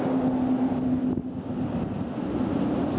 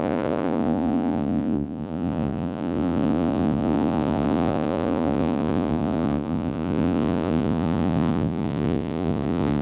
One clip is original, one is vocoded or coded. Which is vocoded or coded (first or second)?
second